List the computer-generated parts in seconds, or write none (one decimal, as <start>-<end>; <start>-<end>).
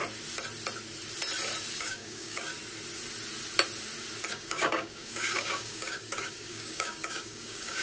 1.7-2.5; 4.3-7.8